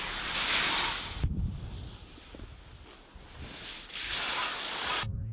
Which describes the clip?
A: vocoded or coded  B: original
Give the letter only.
B